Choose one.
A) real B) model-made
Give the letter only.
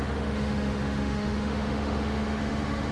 B